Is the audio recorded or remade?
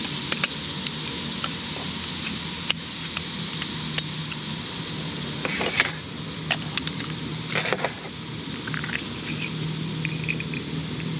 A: recorded